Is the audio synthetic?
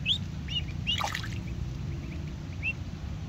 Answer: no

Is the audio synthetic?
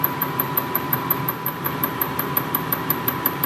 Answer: yes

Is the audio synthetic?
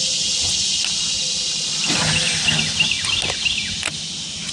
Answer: no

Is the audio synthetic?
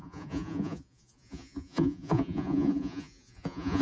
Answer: yes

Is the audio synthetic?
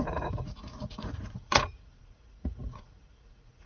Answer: yes